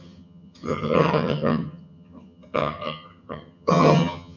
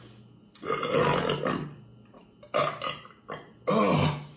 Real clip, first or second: second